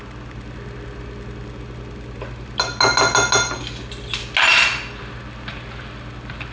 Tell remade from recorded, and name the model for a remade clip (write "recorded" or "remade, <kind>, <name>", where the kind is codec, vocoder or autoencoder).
recorded